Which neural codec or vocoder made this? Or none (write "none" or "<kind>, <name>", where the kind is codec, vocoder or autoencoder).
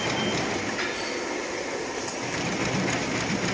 none